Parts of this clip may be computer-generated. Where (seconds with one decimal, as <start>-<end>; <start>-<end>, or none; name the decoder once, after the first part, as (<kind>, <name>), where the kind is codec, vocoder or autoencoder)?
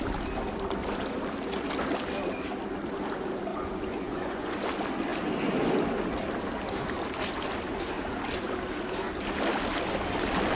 3.5-4.6 (vocoder, Vocos)